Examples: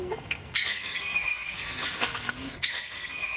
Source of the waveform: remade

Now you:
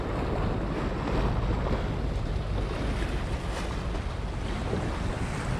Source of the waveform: recorded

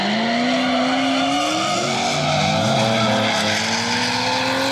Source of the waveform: recorded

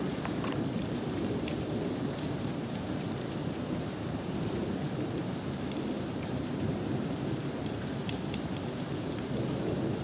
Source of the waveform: remade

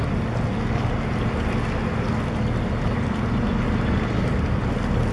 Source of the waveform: recorded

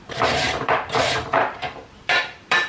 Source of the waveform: remade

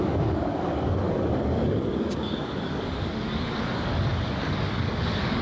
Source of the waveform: remade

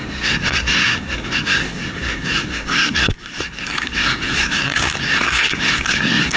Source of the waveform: remade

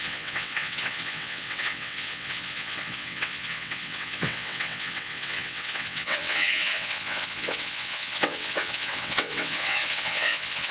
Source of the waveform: remade